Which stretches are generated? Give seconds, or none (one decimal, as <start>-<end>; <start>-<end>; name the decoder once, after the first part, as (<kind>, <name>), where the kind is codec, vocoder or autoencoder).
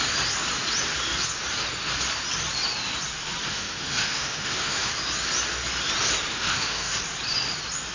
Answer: 3.5-4.9 (autoencoder, DAC-VAE); 6.3-7.0